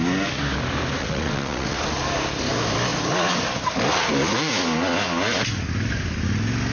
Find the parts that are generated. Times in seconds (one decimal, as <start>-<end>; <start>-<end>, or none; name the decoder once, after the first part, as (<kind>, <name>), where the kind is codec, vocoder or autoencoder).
1.0-1.8 (vocoder, WaveNeXt)